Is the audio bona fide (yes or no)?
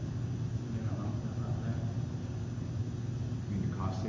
yes